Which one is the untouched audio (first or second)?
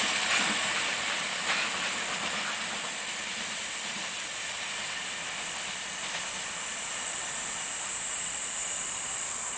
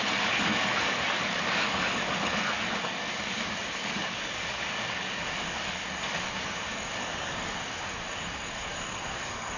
first